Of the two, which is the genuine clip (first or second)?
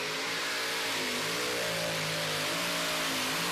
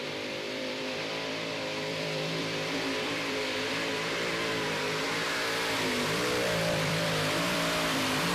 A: first